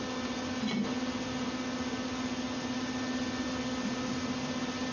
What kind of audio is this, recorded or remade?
recorded